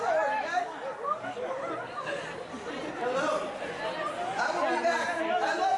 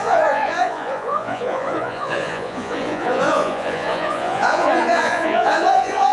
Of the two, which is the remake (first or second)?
second